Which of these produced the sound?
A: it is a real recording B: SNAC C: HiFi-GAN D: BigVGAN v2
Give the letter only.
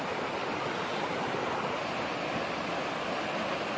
A